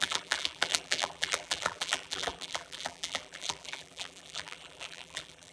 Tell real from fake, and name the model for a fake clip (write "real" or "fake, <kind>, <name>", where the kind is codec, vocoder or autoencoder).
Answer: fake, vocoder, BigVGAN v2